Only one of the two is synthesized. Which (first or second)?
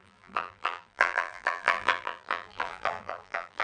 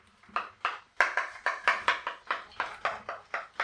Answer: first